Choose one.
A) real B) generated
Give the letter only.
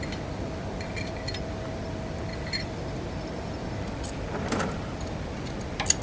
A